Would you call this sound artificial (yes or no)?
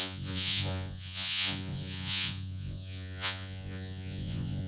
yes